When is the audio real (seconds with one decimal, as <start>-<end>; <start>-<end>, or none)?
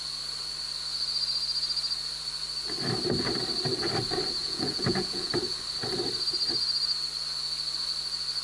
0.0-4.4; 5.3-8.4